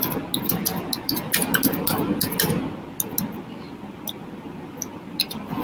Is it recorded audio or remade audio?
recorded